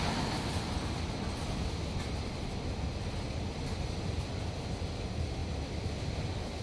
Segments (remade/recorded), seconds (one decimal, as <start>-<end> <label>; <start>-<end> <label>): 0.0-6.6 recorded